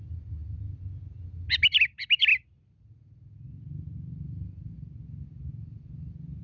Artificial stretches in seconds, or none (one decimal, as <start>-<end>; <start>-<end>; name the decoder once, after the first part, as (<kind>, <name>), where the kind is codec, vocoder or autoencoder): none